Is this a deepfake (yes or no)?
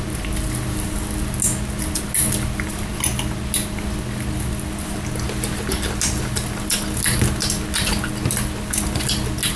no